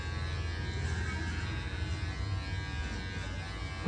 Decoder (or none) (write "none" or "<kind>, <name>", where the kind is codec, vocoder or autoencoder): none